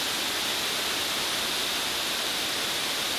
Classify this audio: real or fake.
real